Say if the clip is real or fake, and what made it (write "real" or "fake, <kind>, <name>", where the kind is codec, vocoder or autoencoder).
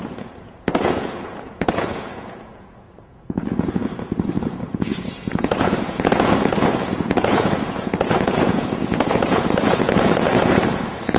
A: fake, vocoder, Vocos